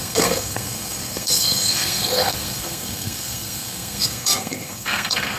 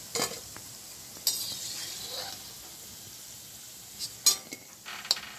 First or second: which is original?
second